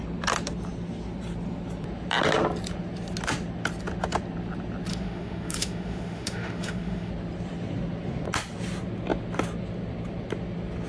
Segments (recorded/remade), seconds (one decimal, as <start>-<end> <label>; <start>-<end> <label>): 0.0-4.9 recorded; 4.9-7.1 remade; 7.1-10.9 recorded